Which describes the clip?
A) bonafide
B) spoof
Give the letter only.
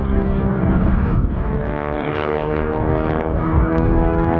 B